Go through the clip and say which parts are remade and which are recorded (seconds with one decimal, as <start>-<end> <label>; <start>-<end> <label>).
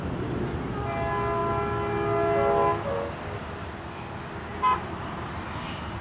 0.0-4.5 recorded; 4.5-5.4 remade; 5.4-6.0 recorded